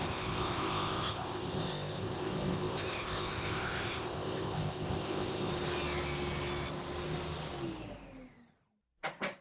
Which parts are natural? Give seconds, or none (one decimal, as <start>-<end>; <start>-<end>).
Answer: 5.5-9.4